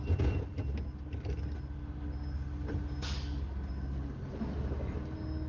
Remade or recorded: recorded